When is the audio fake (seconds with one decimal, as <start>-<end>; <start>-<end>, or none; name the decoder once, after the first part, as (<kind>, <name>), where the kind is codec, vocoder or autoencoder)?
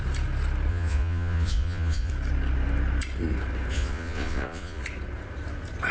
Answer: 0.7-2.1 (vocoder, Vocos); 3.7-4.8